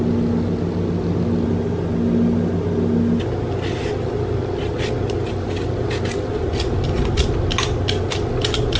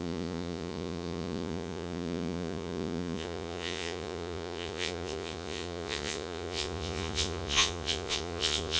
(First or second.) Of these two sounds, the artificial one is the second